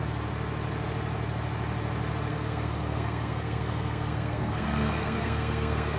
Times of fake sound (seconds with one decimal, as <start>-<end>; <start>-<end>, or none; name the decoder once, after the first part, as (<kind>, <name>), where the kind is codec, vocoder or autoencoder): 2.3-6.0 (codec, SNAC)